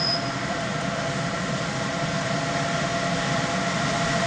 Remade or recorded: remade